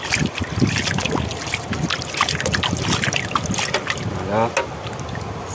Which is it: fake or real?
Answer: real